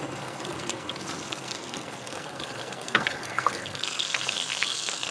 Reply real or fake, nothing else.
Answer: fake